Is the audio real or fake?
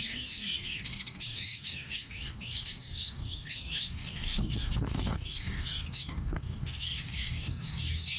fake